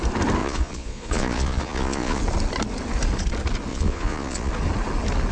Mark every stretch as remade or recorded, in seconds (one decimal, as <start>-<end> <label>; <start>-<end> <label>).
0.0-0.4 recorded; 0.4-2.2 remade; 2.2-3.7 recorded; 3.7-4.5 remade; 4.5-5.3 recorded